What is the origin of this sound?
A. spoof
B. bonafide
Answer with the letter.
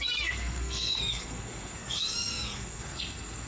A